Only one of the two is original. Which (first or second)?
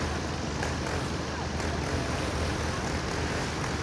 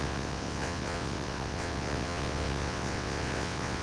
first